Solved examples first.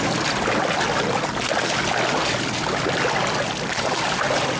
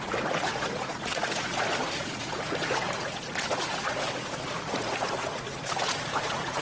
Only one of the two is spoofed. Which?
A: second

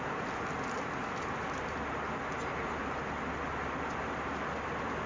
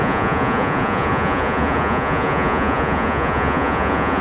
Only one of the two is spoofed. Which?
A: second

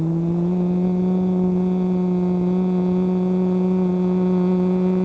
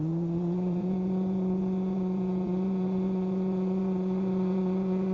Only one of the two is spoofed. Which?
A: second